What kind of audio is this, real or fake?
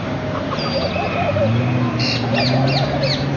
real